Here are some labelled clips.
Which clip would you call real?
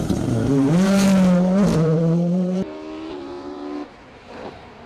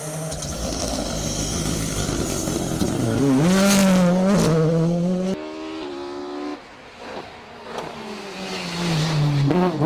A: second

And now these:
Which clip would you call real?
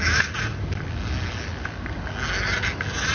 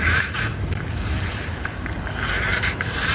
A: first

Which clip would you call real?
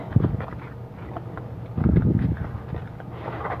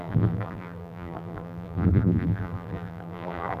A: first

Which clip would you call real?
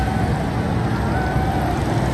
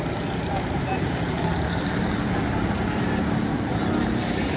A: first